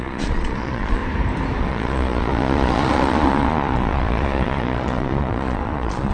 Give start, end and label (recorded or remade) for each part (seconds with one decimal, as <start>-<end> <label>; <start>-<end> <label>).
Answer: 0.0-1.0 remade; 1.0-1.6 recorded; 1.6-6.1 remade